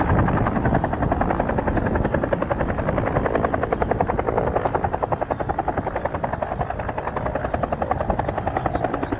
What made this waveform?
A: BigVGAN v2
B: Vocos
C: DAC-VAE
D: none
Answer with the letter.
D